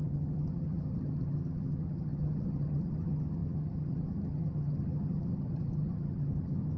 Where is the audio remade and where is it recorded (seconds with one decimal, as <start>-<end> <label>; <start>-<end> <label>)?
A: 0.0-6.8 remade

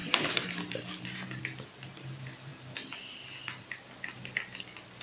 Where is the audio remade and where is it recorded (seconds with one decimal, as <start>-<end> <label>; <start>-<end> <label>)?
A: 0.0-5.0 recorded

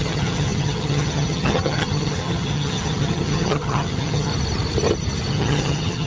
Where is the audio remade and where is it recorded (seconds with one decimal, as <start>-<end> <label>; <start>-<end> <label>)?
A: 0.0-4.3 remade; 4.3-5.3 recorded; 5.3-6.1 remade